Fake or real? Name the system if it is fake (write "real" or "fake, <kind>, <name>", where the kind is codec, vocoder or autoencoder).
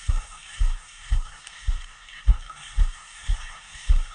fake, codec, SNAC